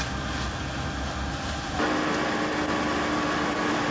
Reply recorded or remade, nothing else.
recorded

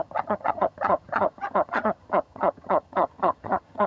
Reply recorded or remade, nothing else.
remade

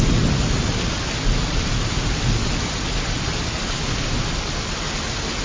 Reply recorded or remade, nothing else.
recorded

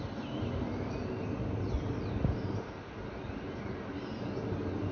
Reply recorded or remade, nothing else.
recorded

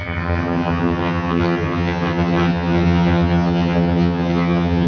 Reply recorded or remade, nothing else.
remade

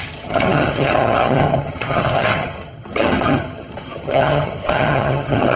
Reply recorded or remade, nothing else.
remade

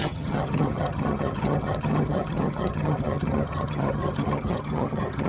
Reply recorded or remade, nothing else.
remade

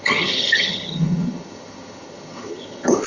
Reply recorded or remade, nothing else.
remade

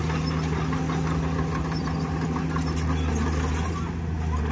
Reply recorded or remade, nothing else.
recorded